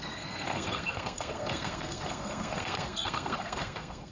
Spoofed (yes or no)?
yes